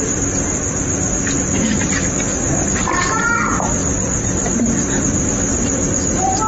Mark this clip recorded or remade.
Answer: recorded